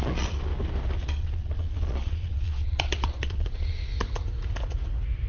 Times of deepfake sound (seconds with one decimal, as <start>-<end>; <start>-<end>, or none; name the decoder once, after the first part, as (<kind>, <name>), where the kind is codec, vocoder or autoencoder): 0.0-0.5 (vocoder, Vocos); 1.0-3.9